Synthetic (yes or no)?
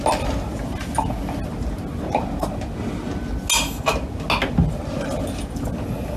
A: no